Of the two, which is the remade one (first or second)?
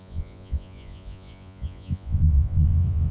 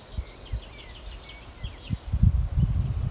first